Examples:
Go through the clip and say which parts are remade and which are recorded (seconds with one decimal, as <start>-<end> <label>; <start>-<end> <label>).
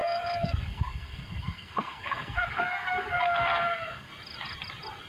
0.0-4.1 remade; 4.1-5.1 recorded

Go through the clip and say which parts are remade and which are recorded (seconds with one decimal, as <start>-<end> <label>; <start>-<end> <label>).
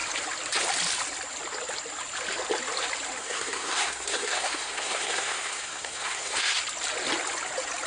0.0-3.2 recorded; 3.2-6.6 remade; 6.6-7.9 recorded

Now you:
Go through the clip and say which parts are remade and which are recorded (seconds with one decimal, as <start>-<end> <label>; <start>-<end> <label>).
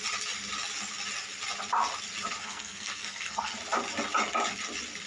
0.0-2.4 recorded; 2.4-3.5 remade; 3.5-5.1 recorded